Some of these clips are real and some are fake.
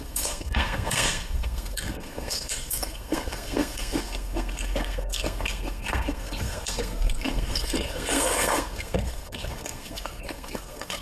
fake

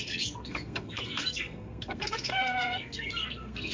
fake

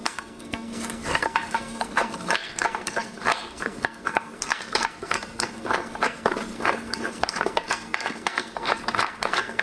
fake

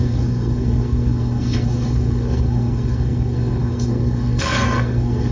fake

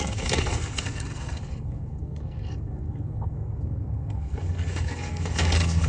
fake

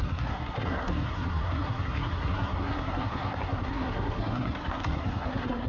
fake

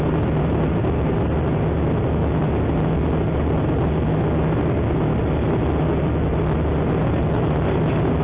real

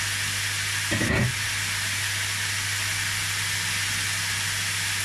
real